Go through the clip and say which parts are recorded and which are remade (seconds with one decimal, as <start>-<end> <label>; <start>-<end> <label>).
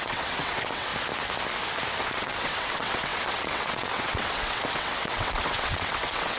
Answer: 0.0-0.9 remade; 0.9-2.0 recorded; 2.0-6.4 remade